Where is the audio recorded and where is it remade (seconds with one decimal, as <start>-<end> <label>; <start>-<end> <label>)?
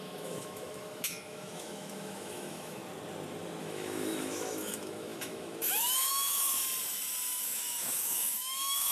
0.0-2.8 remade; 2.8-3.6 recorded; 3.6-6.6 remade; 6.6-7.4 recorded; 7.4-8.9 remade